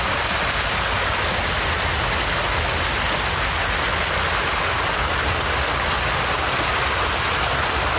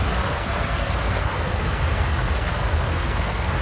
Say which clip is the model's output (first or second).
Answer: second